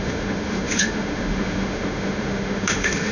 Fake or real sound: fake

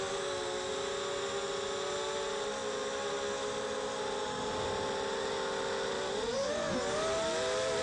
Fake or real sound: real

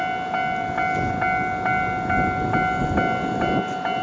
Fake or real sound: real